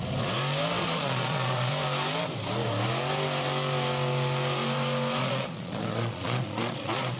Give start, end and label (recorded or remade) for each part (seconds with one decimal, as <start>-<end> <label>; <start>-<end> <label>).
0.0-0.8 recorded; 0.8-1.7 remade; 1.7-5.2 recorded; 5.2-7.2 remade